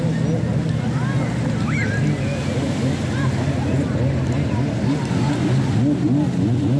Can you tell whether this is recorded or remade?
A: recorded